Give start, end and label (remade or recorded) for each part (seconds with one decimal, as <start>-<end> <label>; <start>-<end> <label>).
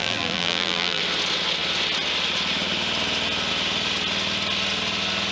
0.0-1.0 remade; 1.0-5.3 recorded